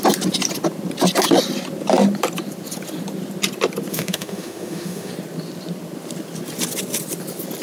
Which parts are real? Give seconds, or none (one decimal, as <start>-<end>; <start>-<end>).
0.0-3.9; 5.1-7.6